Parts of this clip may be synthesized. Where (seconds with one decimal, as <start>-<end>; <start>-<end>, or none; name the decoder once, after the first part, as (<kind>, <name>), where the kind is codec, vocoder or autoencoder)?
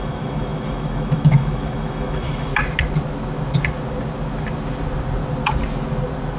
0.0-2.5 (autoencoder, DAC-VAE)